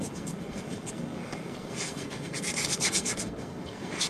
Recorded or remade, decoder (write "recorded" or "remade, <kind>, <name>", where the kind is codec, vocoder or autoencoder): remade, codec, SNAC